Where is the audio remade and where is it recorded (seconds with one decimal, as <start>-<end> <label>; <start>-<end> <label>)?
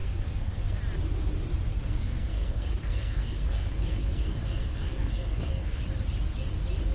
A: 0.0-0.8 remade; 0.8-1.7 recorded; 1.7-5.8 remade; 5.8-6.9 recorded